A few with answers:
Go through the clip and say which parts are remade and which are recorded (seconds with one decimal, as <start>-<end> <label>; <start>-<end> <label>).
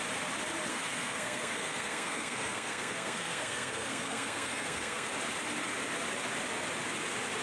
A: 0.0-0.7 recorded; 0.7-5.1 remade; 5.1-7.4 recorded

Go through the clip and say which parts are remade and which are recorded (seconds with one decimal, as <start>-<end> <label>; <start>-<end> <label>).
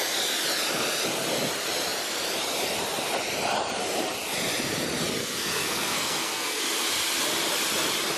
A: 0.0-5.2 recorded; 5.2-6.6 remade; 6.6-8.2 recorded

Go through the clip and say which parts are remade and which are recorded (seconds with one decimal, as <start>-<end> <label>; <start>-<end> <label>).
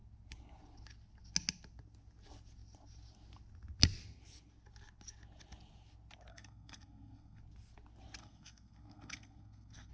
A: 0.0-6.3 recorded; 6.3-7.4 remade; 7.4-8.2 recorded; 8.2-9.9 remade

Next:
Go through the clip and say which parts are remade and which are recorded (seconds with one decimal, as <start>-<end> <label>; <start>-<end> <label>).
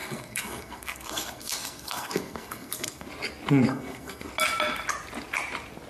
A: 0.0-3.1 remade; 3.1-3.7 recorded; 3.7-4.3 remade; 4.3-5.9 recorded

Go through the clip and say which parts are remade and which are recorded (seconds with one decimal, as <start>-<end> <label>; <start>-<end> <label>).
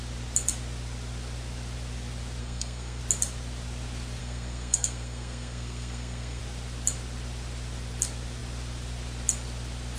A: 0.0-2.4 recorded; 2.4-3.0 remade; 3.0-4.2 recorded; 4.2-6.4 remade; 6.4-10.0 recorded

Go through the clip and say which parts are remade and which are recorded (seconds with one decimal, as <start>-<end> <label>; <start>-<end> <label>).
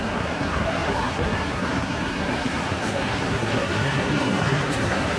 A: 0.0-5.2 remade